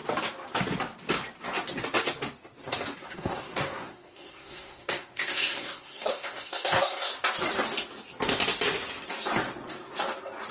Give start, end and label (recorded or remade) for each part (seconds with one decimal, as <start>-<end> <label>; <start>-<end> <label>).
0.0-3.0 recorded; 3.0-7.1 remade; 7.1-10.5 recorded